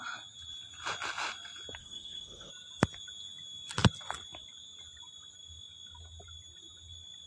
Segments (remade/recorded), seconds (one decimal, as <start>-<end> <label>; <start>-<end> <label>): 0.0-1.8 recorded; 1.8-2.5 remade; 2.5-7.3 recorded